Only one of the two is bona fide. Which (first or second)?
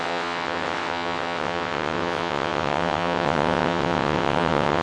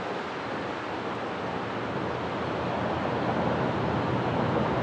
second